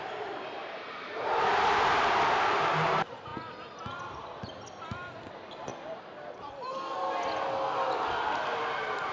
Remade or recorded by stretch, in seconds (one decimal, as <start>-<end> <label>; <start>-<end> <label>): 0.0-3.3 remade; 3.3-5.3 recorded; 5.3-5.7 remade; 5.7-8.7 recorded; 8.7-9.1 remade